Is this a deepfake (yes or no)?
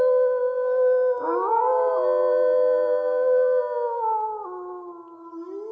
no